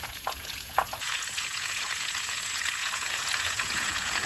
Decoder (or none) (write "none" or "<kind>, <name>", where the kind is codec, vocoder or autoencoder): vocoder, Vocos